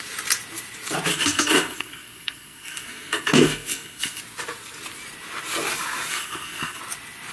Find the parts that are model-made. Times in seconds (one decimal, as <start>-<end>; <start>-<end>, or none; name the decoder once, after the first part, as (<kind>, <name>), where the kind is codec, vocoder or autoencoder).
1.1-4.2 (codec, SNAC); 6.1-6.8